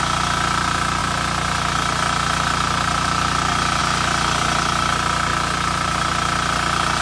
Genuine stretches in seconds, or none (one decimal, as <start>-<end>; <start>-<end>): 0.0-7.0

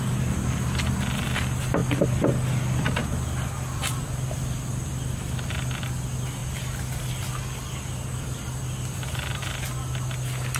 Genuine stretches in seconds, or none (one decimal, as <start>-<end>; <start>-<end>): 0.0-10.6

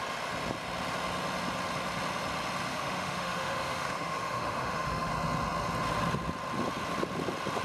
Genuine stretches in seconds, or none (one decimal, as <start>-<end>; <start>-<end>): 0.0-2.7; 5.1-7.6

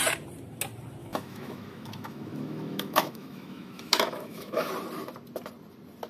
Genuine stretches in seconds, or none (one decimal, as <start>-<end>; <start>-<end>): 0.0-1.0; 4.7-6.1

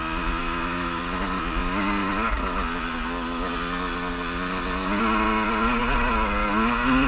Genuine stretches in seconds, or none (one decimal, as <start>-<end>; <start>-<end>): 0.0-0.4; 1.0-7.1

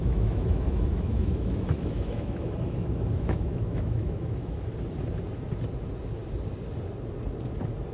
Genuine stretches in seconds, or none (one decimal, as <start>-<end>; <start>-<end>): 4.6-7.9

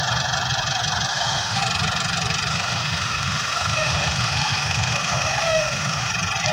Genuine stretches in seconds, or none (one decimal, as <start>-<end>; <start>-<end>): 0.0-1.1; 1.6-2.5; 6.1-6.5